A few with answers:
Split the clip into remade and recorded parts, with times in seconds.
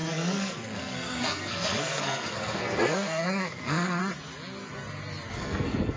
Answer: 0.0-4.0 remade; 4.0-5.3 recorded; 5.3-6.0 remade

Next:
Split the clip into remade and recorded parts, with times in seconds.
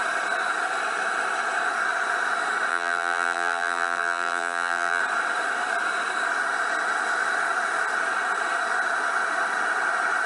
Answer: 0.0-2.7 recorded; 2.7-5.0 remade; 5.0-10.3 recorded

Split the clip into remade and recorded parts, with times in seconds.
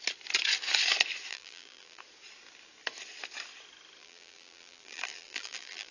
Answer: 0.0-1.3 recorded; 1.3-2.0 remade; 2.0-4.0 recorded; 4.0-5.9 remade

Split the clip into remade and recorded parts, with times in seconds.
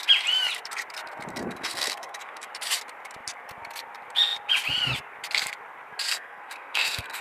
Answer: 0.0-1.3 recorded; 1.3-2.5 remade; 2.5-6.1 recorded; 6.1-7.2 remade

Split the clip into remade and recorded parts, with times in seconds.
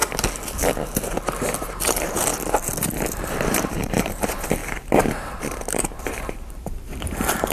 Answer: 0.0-1.9 recorded; 1.9-2.3 remade; 2.3-3.1 recorded; 3.1-7.5 remade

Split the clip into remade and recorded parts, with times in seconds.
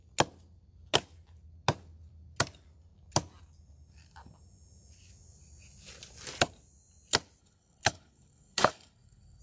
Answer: 0.0-7.4 recorded; 7.4-9.4 remade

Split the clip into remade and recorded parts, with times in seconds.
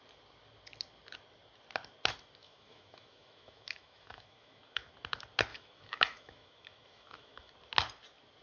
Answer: 0.0-2.4 recorded; 2.4-4.9 remade; 4.9-5.5 recorded; 5.5-7.5 remade; 7.5-8.4 recorded